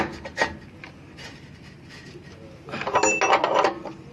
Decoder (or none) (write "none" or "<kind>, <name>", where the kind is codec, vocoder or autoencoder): none